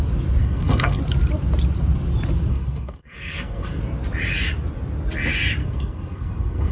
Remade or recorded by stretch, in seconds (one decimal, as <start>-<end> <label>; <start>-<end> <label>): 0.0-0.4 recorded; 0.4-1.0 remade; 1.0-2.5 recorded; 2.5-3.8 remade; 3.8-5.6 recorded; 5.6-6.7 remade